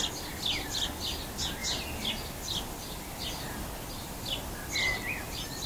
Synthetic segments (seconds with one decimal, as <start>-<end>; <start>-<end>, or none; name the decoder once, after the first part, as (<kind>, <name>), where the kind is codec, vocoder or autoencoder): none

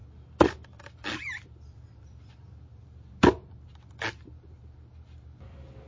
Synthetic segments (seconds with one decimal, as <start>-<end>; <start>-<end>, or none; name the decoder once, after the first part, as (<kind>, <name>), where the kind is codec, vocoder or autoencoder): 0.0-3.1 (vocoder, BigVGAN v2)

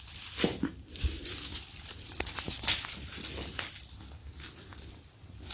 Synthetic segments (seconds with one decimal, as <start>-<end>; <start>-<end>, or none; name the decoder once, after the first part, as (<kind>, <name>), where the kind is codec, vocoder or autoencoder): 1.5-2.6 (vocoder, BigVGAN v2); 4.2-5.5

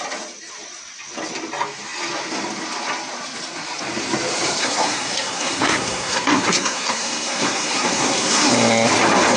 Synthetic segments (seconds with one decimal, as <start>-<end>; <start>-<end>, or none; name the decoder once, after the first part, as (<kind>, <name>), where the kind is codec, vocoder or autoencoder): 4.6-8.5 (codec, SNAC)

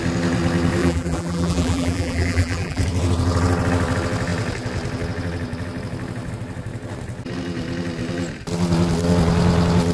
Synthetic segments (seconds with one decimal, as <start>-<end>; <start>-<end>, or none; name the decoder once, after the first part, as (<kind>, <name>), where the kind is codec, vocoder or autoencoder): 0.8-2.8 (vocoder, BigVGAN v2)

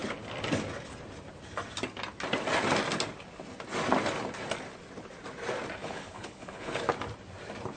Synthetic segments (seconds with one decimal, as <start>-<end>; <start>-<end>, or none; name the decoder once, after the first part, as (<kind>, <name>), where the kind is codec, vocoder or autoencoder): 5.8-6.8 (codec, HILCodec)